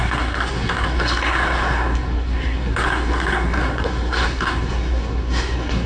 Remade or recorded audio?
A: remade